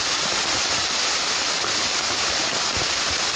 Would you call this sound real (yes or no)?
yes